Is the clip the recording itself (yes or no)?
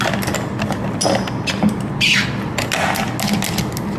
yes